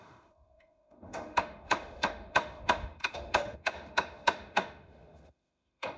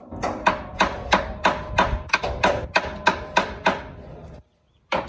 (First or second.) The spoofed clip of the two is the first